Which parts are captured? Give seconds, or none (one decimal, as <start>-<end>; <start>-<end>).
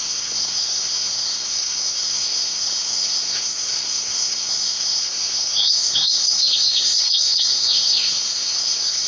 none